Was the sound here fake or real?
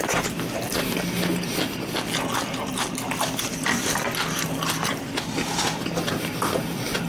real